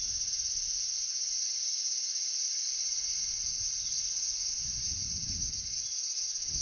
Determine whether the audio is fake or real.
real